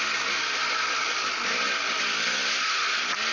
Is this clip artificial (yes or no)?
no